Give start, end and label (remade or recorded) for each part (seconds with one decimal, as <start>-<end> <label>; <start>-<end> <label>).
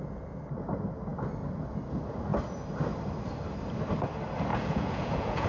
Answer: 0.0-4.5 recorded; 4.5-5.5 remade